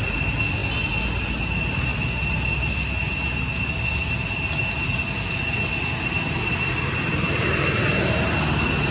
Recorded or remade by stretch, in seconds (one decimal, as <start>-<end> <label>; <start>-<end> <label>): 0.0-8.9 recorded